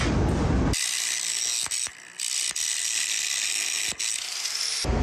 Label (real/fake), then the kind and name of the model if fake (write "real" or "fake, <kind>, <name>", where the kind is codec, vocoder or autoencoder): real